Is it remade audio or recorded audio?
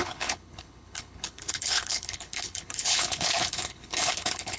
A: remade